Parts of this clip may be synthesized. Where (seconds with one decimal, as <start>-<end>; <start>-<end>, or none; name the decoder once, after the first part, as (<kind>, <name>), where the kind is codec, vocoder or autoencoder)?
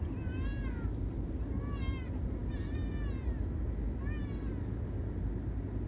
none